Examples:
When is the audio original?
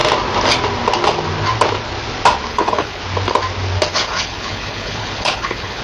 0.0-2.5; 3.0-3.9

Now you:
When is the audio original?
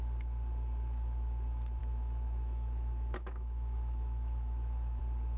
0.0-1.8; 5.0-5.4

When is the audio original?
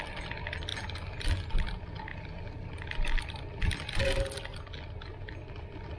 0.0-6.0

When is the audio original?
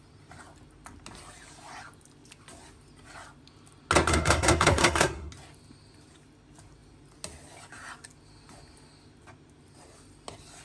0.0-4.1; 5.3-10.6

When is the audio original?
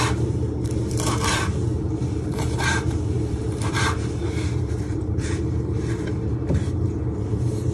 none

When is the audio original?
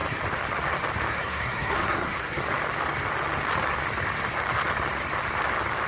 0.0-1.1; 2.4-5.9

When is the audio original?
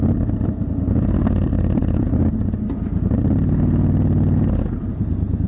0.0-5.5